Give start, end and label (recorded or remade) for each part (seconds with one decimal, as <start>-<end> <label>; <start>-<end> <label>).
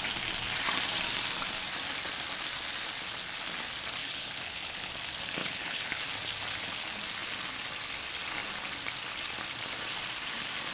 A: 0.0-4.0 recorded; 4.0-4.9 remade; 4.9-5.4 recorded; 5.4-6.0 remade; 6.0-10.7 recorded